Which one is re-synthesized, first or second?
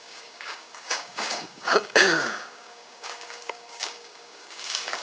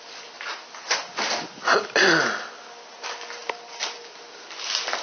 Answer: first